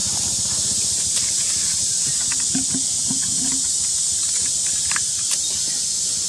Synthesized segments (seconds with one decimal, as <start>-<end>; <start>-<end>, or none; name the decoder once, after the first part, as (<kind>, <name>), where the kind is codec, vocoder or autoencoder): 0.0-2.1 (vocoder, BigVGAN v2); 4.1-5.3